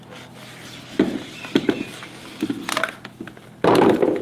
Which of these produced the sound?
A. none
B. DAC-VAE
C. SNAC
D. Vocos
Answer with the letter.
A